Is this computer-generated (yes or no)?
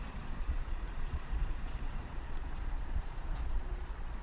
yes